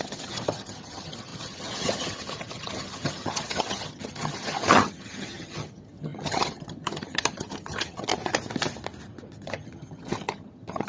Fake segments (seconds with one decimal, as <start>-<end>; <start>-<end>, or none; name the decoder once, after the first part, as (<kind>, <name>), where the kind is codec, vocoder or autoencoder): 0.0-8.1 (vocoder, HiFi-GAN); 9.3-10.9